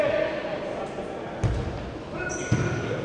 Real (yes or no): yes